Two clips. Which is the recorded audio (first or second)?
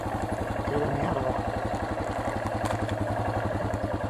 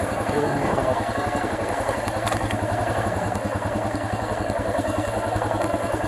first